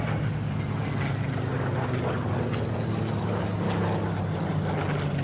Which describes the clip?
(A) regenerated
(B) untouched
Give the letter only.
B